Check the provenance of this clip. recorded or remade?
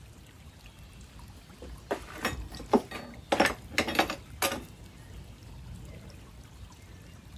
recorded